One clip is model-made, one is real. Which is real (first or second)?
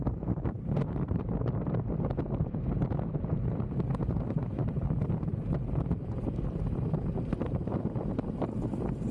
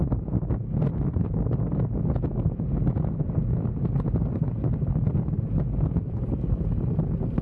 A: second